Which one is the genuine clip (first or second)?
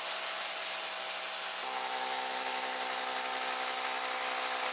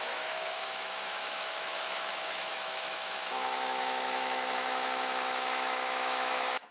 first